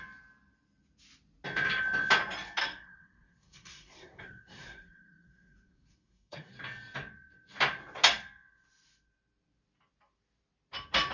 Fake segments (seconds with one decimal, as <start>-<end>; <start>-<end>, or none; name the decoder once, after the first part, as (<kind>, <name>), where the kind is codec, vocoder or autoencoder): 2.6-6.5 (codec, SNAC)